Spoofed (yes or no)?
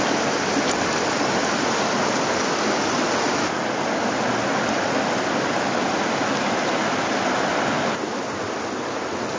no